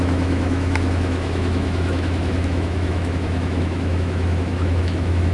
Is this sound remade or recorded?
remade